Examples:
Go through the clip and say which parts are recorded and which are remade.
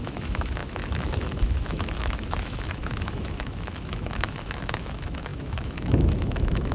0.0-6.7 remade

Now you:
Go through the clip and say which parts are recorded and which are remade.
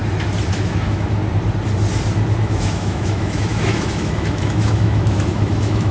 0.0-0.5 recorded; 0.5-1.2 remade; 1.2-2.4 recorded; 2.4-5.9 remade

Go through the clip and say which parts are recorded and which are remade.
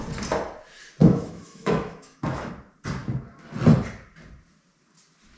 0.0-1.0 recorded; 1.0-2.5 remade; 2.5-5.4 recorded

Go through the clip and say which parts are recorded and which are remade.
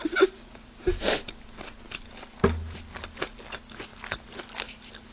0.0-5.1 recorded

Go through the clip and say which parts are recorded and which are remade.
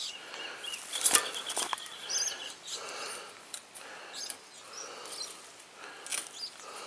0.0-6.9 recorded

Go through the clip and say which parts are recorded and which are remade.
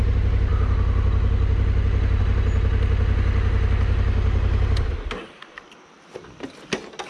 0.0-7.1 recorded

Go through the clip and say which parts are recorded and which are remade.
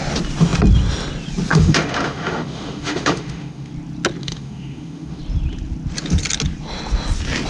0.0-1.5 recorded; 1.5-3.7 remade; 3.7-4.2 recorded; 4.2-5.2 remade; 5.2-7.5 recorded